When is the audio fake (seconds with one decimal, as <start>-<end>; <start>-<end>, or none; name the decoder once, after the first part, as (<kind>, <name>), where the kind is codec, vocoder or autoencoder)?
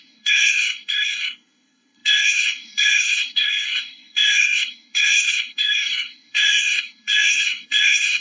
0.0-8.2 (codec, SNAC)